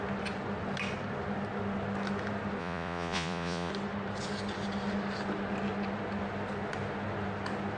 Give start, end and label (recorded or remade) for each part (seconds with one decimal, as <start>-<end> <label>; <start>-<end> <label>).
0.0-2.6 recorded; 2.6-3.7 remade; 3.7-7.8 recorded